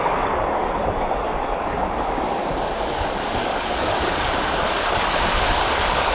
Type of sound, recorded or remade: remade